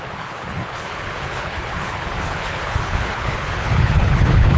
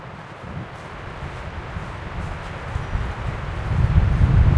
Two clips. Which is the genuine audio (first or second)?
second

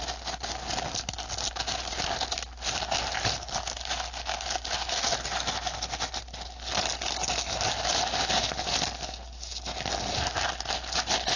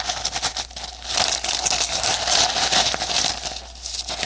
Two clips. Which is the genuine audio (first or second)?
first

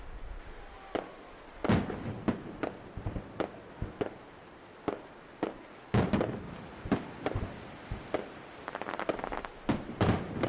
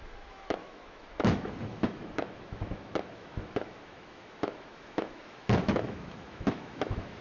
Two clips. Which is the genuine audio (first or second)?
first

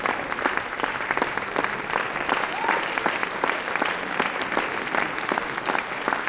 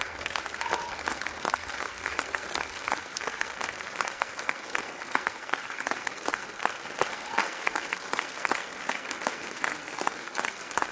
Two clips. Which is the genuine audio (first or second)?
first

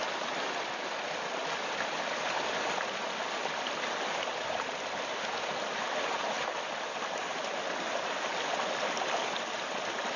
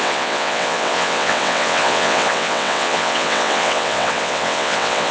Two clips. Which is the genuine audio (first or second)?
first